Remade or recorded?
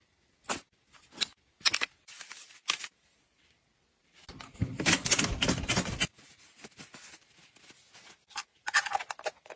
recorded